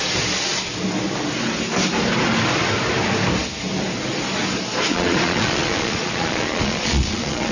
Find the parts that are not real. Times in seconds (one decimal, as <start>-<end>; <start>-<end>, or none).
4.9-7.5